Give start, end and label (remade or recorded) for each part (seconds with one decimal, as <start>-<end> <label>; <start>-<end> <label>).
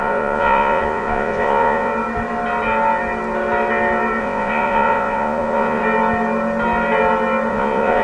0.0-1.9 remade; 1.9-4.2 recorded; 4.2-5.8 remade; 5.8-7.5 recorded; 7.5-8.0 remade